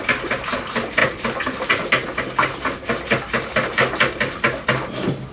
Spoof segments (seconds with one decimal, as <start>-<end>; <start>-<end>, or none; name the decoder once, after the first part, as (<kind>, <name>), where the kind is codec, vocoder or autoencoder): none